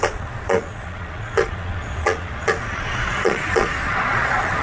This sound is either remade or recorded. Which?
remade